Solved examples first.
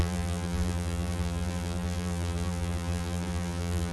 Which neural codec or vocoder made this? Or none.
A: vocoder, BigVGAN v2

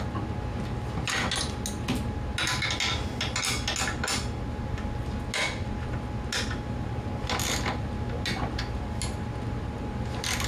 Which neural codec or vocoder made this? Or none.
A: none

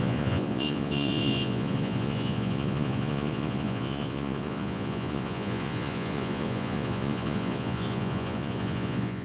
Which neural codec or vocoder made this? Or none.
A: vocoder, Vocos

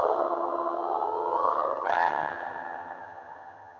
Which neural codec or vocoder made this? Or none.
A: vocoder, HiFi-GAN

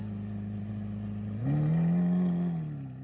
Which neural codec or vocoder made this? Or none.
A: none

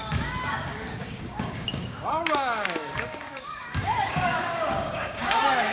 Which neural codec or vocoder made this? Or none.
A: codec, DAC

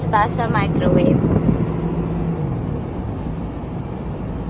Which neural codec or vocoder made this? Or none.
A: none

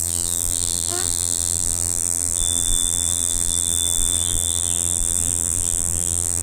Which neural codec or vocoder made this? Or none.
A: vocoder, BigVGAN v2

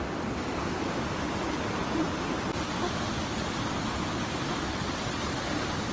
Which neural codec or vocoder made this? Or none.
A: none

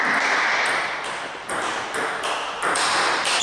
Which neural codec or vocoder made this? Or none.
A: none